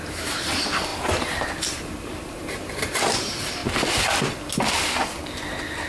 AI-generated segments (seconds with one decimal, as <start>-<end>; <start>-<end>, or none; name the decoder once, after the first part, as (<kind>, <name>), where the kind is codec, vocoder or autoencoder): 0.0-3.6 (vocoder, BigVGAN v2)